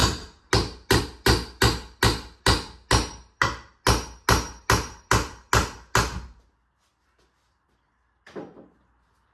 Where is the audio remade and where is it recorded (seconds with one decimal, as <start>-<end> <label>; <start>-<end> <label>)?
0.0-9.3 recorded